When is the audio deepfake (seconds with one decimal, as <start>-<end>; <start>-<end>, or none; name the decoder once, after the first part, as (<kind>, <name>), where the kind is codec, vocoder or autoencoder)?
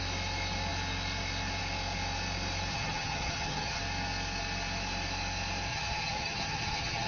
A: 2.7-3.8 (vocoder, HiFi-GAN); 5.7-7.1